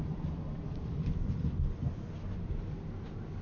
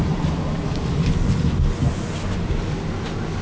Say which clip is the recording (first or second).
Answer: second